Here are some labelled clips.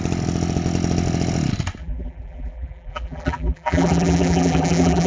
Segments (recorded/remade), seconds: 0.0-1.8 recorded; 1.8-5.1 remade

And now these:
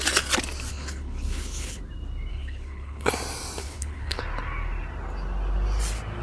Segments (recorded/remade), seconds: 0.0-0.7 recorded; 0.7-1.8 remade; 1.8-2.3 recorded; 2.3-3.1 remade; 3.1-3.6 recorded; 3.6-4.2 remade; 4.2-6.2 recorded